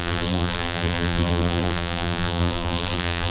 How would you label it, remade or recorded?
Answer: remade